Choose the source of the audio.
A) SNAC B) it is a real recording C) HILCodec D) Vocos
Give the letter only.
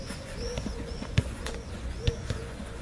D